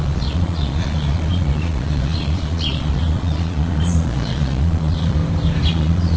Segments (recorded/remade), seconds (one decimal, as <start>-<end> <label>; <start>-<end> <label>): 0.0-5.2 remade; 5.2-5.7 recorded; 5.7-6.2 remade